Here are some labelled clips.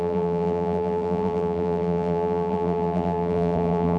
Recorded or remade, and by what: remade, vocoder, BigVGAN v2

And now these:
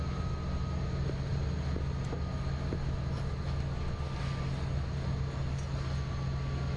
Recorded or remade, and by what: recorded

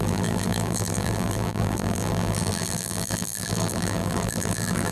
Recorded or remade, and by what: remade, vocoder, BigVGAN v2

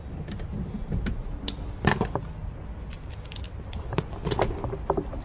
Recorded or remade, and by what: recorded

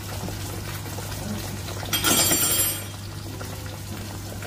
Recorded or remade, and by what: recorded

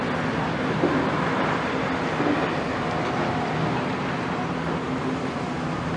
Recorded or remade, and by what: recorded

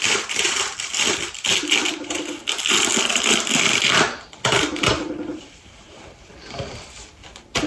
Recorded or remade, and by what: remade, vocoder, BigVGAN v2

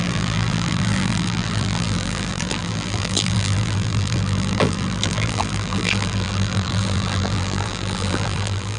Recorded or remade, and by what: remade, vocoder, BigVGAN v2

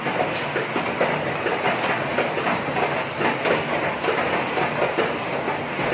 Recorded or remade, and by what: recorded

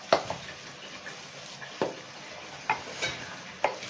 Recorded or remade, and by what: recorded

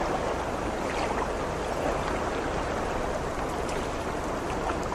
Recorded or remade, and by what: recorded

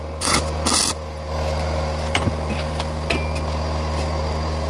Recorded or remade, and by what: recorded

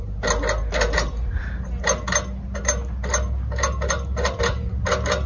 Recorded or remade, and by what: recorded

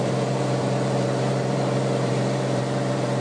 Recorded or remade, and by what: remade, vocoder, BigVGAN v2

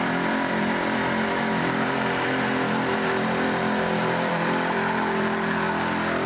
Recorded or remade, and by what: remade, vocoder, BigVGAN v2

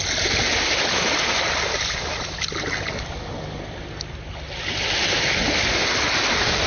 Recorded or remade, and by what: recorded